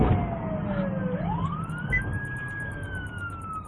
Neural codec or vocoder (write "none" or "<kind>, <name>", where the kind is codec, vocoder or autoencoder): none